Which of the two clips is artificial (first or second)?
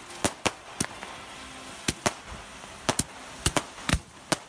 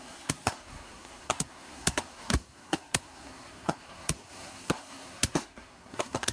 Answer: second